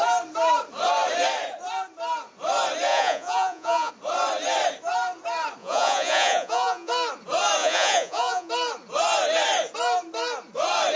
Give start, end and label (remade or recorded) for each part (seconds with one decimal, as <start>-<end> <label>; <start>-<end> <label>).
0.0-2.9 recorded; 2.9-3.9 remade; 3.9-5.6 recorded; 5.6-6.9 remade; 6.9-7.6 recorded; 7.6-8.5 remade; 8.5-11.0 recorded